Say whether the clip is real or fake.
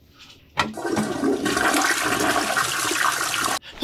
real